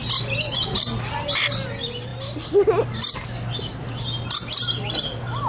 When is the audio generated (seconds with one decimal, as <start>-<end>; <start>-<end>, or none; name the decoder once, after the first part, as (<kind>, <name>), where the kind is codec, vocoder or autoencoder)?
none